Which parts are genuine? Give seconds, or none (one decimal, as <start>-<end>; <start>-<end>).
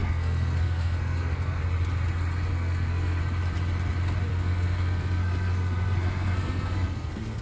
1.6-2.5; 3.2-4.3